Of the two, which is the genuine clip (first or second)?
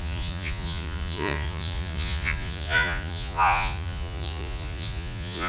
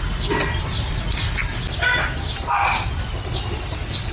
second